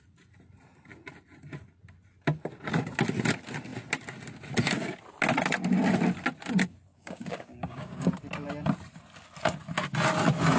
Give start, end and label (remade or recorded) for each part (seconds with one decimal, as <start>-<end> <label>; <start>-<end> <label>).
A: 0.0-6.9 recorded; 6.9-8.1 remade; 8.1-10.6 recorded